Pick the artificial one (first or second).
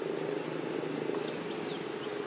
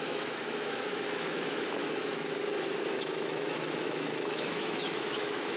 second